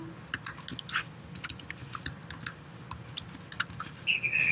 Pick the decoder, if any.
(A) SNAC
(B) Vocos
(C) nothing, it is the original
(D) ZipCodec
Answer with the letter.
C